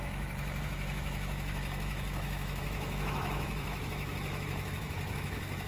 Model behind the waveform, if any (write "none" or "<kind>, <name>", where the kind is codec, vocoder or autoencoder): autoencoder, DAC-VAE